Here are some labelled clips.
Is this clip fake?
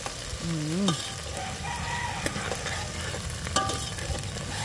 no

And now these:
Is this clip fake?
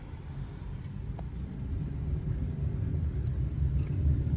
yes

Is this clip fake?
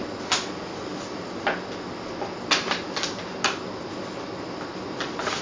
no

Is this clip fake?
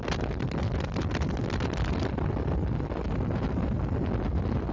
no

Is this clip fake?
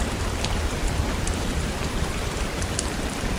no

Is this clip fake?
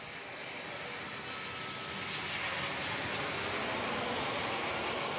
no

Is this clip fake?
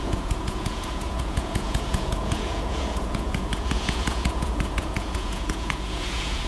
yes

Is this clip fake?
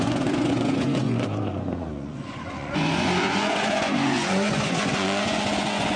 yes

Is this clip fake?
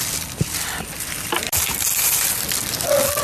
no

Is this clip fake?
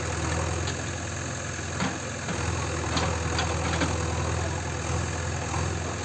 no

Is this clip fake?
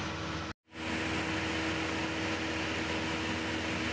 no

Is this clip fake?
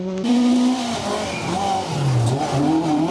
no